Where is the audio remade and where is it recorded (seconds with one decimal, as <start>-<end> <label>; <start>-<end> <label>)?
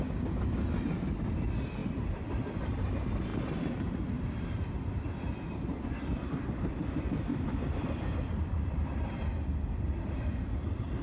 0.0-7.3 recorded; 7.3-9.3 remade; 9.3-11.0 recorded